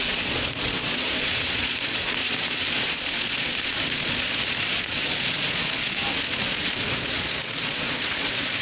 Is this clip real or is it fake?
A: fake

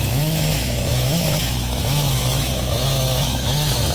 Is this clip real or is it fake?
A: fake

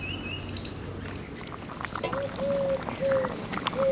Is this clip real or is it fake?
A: real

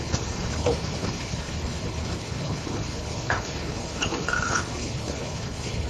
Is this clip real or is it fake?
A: fake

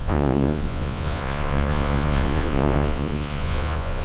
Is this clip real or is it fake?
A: fake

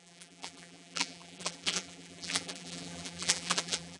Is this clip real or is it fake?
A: fake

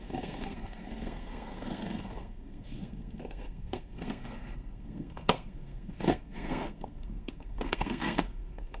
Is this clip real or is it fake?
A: fake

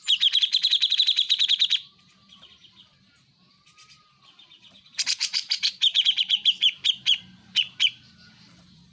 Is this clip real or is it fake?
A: fake